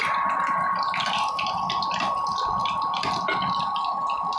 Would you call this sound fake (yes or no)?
no